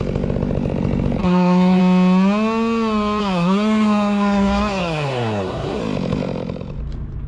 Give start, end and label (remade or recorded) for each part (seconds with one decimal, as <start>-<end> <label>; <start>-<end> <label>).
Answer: 0.0-1.2 recorded; 1.2-1.8 remade; 1.8-3.2 recorded; 3.2-5.8 remade; 5.8-7.3 recorded